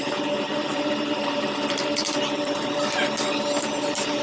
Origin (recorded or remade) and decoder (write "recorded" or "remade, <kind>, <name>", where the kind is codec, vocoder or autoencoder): remade, vocoder, BigVGAN v2